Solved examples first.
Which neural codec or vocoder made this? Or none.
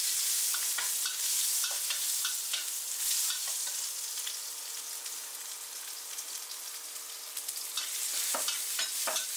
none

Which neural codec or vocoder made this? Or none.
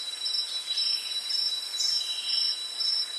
none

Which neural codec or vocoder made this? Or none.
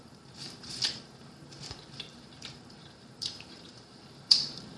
vocoder, BigVGAN v2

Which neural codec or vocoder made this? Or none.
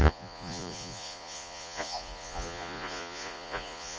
vocoder, Vocos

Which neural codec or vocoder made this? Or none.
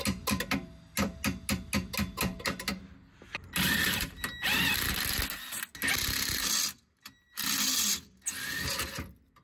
none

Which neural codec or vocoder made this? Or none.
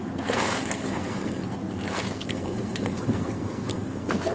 codec, SNAC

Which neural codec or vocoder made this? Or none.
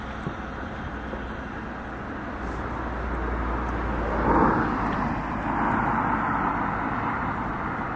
none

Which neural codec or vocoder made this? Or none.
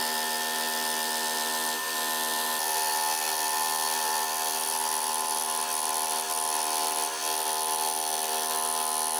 none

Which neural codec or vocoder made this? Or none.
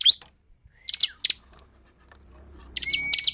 none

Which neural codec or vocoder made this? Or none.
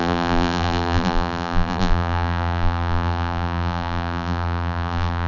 vocoder, BigVGAN v2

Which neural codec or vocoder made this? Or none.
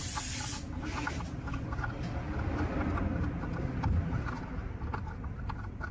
none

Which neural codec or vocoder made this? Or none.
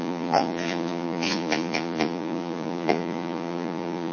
vocoder, Vocos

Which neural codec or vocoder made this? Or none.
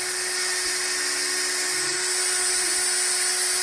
none